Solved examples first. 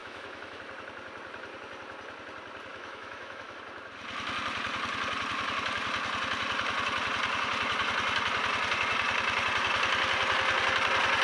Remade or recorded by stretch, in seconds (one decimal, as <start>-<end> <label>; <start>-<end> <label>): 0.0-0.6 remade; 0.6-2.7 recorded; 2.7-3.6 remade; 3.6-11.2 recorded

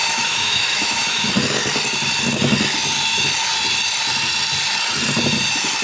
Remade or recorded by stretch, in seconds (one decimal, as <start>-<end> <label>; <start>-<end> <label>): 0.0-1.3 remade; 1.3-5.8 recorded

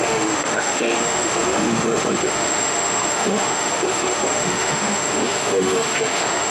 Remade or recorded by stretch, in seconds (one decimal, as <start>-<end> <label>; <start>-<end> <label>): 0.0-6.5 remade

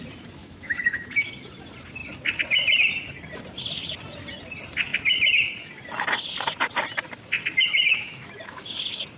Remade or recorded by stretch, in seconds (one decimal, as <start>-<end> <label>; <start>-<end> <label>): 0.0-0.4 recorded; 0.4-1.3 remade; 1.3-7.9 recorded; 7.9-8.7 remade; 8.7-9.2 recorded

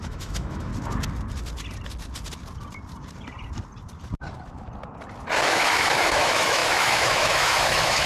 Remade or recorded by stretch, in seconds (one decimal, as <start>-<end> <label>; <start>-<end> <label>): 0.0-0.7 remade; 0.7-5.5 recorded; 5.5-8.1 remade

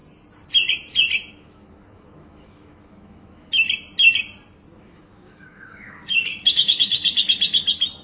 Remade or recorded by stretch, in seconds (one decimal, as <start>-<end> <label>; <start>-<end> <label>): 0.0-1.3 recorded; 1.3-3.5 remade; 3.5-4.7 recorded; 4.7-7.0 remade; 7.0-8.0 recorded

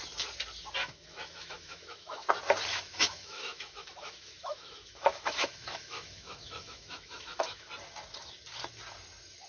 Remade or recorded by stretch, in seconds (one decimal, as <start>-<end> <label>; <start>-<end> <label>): 0.0-0.8 recorded; 0.8-2.3 remade; 2.3-2.7 recorded; 2.7-7.7 remade; 7.7-9.5 recorded